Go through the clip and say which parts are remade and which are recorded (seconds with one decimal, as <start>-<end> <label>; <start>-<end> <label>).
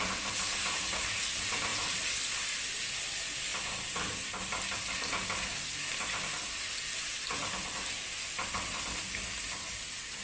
0.0-10.2 recorded